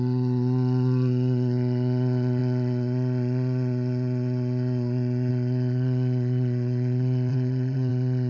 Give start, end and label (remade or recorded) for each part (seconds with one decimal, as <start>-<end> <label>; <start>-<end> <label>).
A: 0.0-7.3 recorded; 7.3-7.9 remade; 7.9-8.3 recorded